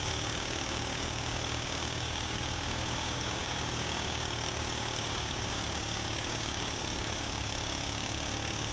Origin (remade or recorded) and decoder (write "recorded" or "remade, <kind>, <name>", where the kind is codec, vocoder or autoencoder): remade, codec, DAC